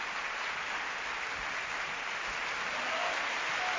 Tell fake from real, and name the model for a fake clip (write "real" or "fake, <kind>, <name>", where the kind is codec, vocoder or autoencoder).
real